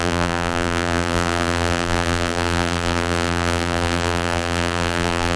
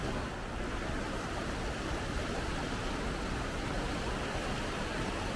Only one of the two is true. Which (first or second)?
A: second